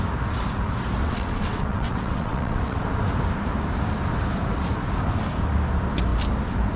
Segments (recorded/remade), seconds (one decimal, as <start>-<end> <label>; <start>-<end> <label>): 0.0-1.0 recorded; 1.0-2.8 remade; 2.8-6.8 recorded